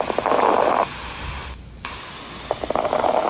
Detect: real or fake real